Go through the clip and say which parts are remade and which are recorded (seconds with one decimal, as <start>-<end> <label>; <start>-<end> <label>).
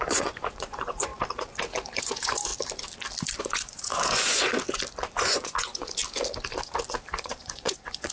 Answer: 0.0-1.1 remade; 1.1-2.0 recorded; 2.0-2.5 remade; 2.5-3.5 recorded; 3.5-4.5 remade; 4.5-5.1 recorded; 5.1-6.0 remade; 6.0-7.2 recorded; 7.2-8.1 remade